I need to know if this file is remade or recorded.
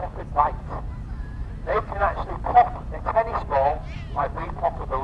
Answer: remade